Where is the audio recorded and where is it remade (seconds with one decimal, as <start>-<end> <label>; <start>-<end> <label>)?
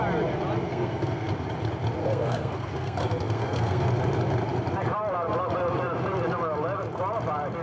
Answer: 0.0-0.7 recorded; 0.7-1.3 remade; 1.3-2.0 recorded; 2.0-3.9 remade; 3.9-7.6 recorded